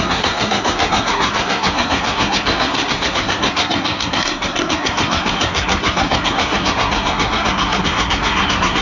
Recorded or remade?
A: remade